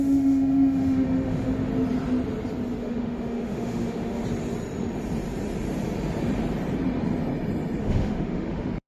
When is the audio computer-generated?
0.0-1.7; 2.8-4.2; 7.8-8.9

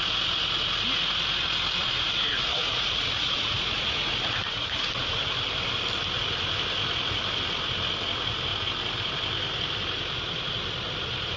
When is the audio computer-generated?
1.8-5.2

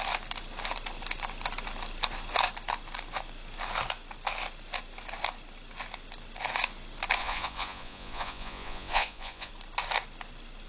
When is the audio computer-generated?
7.2-9.5

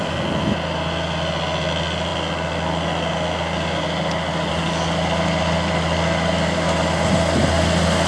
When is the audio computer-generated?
none